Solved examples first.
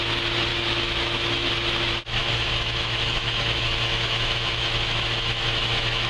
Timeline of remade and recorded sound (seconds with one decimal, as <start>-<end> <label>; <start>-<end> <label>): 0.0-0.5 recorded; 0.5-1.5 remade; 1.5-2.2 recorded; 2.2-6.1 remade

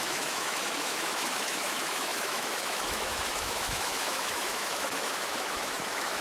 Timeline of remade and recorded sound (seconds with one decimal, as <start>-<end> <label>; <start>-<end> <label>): 0.0-6.2 remade

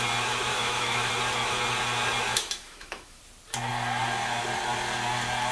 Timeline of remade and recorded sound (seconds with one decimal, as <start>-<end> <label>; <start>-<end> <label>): 0.0-0.5 recorded; 0.5-1.1 remade; 1.1-2.3 recorded; 2.3-3.2 remade; 3.2-5.5 recorded